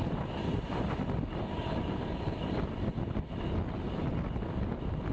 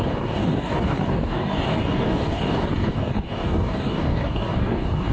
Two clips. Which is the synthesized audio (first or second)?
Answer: second